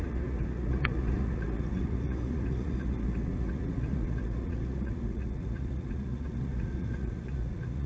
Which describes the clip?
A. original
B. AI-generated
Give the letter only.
B